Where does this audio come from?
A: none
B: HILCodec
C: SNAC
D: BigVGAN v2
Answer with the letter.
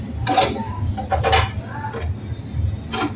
D